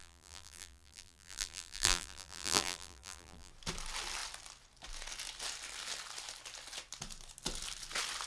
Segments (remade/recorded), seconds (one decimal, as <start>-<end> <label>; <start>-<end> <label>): 0.0-3.5 remade; 3.5-8.3 recorded

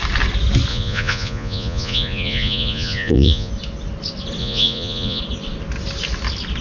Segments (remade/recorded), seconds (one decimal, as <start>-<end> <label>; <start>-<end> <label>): 0.0-0.7 recorded; 0.7-3.5 remade; 3.5-4.4 recorded; 4.4-5.2 remade; 5.2-6.6 recorded

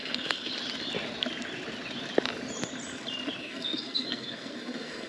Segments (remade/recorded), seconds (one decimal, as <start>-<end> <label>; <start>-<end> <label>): 0.0-0.5 remade; 0.5-3.4 recorded; 3.4-5.1 remade